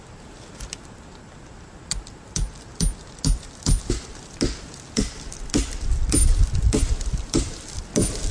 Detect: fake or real real